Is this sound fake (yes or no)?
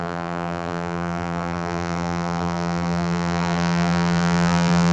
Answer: yes